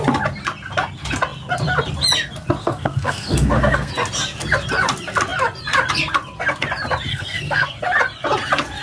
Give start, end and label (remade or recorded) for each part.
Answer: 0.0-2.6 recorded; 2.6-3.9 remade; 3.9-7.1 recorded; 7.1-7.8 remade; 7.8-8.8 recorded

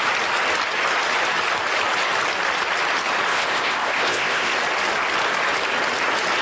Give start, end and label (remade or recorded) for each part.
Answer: 0.0-3.3 recorded; 3.3-4.5 remade; 4.5-6.4 recorded